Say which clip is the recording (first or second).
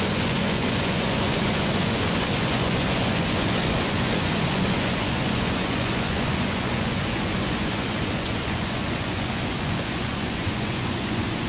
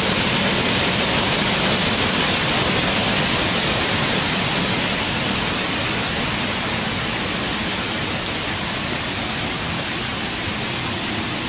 second